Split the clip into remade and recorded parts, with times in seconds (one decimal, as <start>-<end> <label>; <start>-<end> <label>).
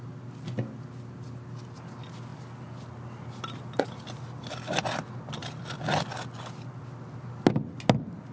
0.0-8.3 recorded